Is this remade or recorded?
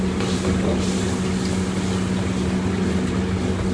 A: recorded